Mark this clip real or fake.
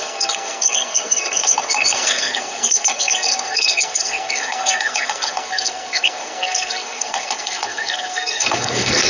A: fake